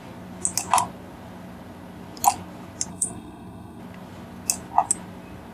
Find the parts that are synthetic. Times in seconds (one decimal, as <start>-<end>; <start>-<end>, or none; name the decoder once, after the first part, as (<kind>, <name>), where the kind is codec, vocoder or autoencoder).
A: 2.9-3.8 (codec, SNAC)